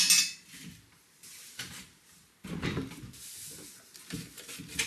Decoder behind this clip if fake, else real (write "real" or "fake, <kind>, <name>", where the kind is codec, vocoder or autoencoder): real